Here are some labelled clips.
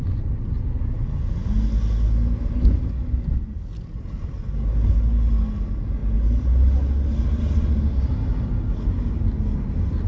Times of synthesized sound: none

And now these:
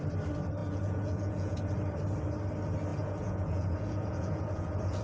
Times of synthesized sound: 0.6-1.6 (vocoder, Vocos); 2.9-5.0

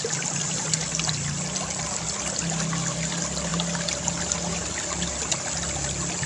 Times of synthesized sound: none

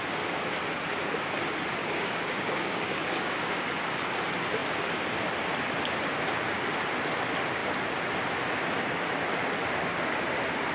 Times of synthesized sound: 1.8-4.1 (codec, DAC)